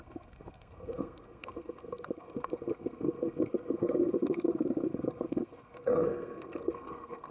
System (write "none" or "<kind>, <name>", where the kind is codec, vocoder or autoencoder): codec, SNAC